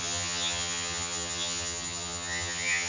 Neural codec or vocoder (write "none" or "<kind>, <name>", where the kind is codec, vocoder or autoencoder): vocoder, HiFi-GAN